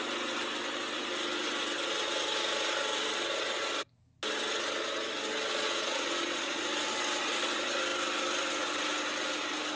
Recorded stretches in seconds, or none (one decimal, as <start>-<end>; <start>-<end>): 0.0-5.5; 6.6-9.8